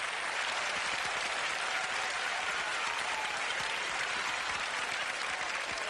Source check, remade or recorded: remade